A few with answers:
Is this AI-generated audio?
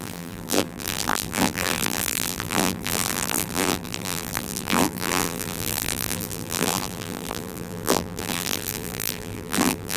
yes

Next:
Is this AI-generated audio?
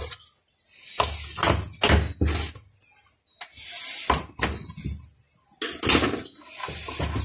no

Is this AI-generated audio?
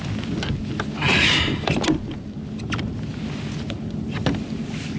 no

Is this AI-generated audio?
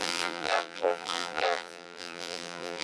yes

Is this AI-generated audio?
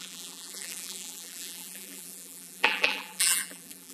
yes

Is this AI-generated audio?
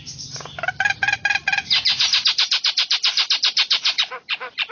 yes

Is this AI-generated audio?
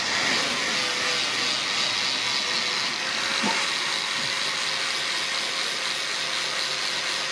no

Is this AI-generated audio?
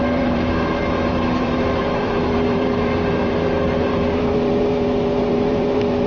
yes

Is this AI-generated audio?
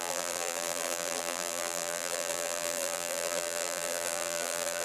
yes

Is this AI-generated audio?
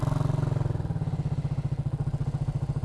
no